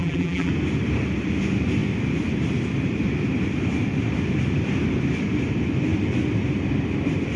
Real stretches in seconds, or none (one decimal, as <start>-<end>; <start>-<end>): 0.5-7.4